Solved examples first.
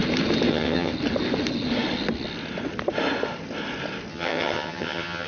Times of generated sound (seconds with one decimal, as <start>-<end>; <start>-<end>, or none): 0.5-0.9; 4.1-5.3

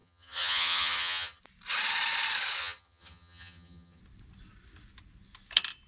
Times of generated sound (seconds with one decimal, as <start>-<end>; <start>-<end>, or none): 0.0-1.4; 2.6-4.0

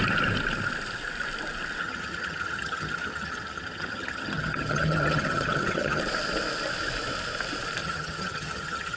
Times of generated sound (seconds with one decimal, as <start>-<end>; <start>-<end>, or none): 1.8-6.0; 7.8-9.0

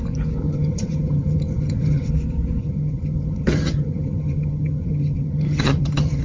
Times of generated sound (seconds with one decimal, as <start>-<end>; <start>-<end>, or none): 0.4-2.1; 2.6-6.2